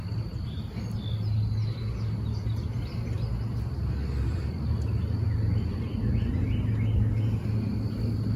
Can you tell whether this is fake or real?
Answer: real